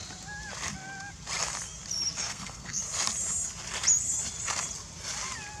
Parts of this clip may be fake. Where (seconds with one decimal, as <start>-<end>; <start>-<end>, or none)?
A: 2.2-2.8